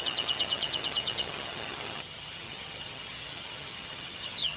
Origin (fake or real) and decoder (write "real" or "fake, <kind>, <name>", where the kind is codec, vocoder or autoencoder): fake, vocoder, HiFi-GAN